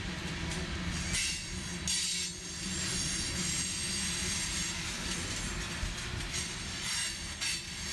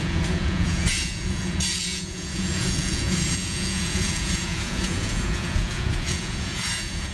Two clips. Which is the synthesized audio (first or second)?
second